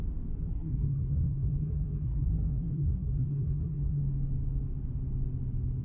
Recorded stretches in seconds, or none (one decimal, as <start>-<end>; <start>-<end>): 0.0-0.5; 4.0-5.8